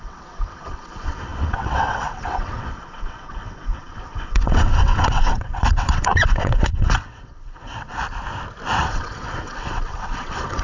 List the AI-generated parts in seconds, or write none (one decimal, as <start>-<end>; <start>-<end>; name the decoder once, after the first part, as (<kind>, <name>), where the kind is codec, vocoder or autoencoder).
0.0-8.0 (vocoder, WaveNeXt); 8.8-10.6

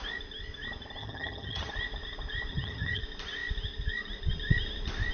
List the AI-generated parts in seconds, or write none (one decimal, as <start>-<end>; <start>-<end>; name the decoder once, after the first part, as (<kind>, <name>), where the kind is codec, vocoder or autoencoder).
1.0-1.7 (vocoder, HiFi-GAN); 2.5-3.0